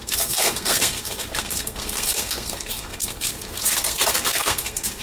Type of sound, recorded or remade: remade